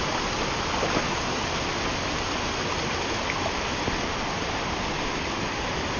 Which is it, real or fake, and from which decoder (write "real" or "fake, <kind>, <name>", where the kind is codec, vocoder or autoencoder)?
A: real